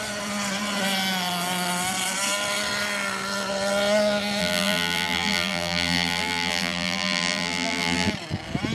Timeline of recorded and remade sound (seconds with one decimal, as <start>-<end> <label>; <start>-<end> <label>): 0.0-4.4 recorded; 4.4-8.1 remade; 8.1-8.7 recorded